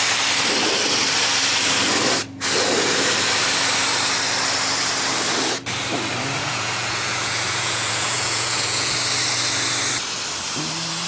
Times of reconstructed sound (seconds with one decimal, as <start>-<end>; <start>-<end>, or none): 6.4-8.9